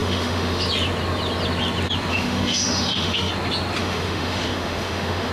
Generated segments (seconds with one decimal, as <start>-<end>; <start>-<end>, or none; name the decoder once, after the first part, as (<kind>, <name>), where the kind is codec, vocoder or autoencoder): 0.0-0.6 (autoencoder, DAC-VAE); 2.1-3.3; 3.8-5.3